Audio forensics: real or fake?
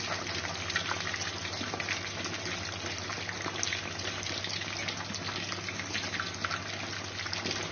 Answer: real